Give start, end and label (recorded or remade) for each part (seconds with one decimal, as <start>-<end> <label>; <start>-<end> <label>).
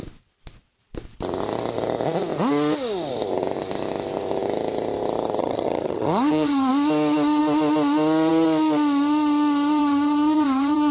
0.0-5.4 recorded; 5.4-6.7 remade; 6.7-9.8 recorded; 9.8-10.9 remade